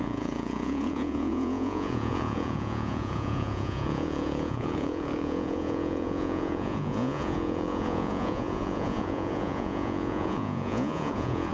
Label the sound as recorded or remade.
remade